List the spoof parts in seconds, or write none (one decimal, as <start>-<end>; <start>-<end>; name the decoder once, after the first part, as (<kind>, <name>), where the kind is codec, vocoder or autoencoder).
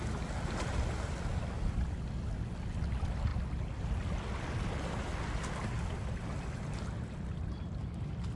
none